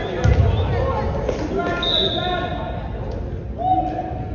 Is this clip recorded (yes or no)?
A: yes